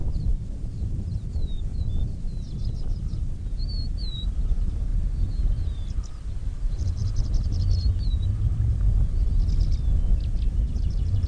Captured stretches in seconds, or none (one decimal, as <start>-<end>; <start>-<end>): 4.9-6.1; 7.0-10.5

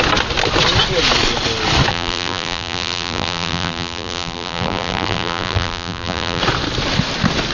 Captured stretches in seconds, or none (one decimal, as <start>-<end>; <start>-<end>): 0.0-1.9; 6.4-7.5